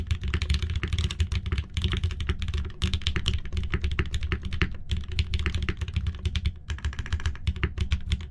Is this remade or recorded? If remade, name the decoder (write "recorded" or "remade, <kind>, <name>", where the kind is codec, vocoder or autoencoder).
recorded